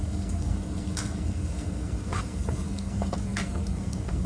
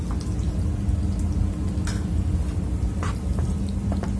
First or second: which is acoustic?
second